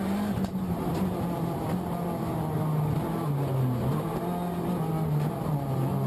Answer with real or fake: real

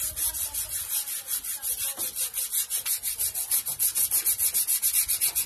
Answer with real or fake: real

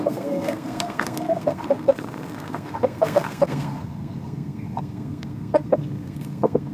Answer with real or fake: fake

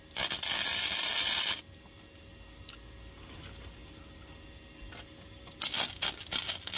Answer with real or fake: real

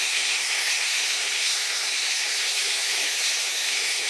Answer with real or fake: fake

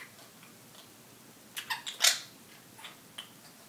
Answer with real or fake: real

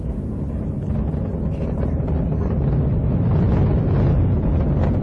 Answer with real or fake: real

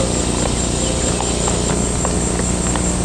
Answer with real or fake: real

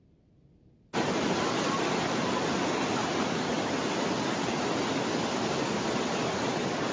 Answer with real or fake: real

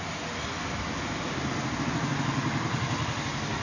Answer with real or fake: real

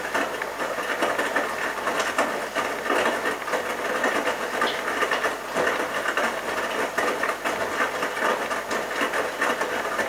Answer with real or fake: real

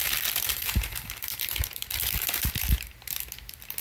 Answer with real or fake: fake